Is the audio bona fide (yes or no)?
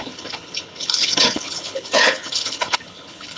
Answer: no